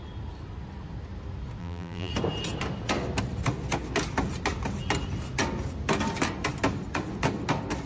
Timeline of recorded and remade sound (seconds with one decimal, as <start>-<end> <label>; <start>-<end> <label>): 0.0-1.6 recorded; 1.6-2.1 remade; 2.1-7.9 recorded